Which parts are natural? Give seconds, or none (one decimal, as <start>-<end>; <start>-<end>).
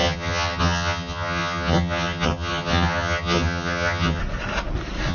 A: 4.2-5.1